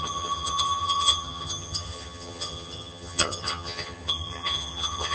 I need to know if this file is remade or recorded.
remade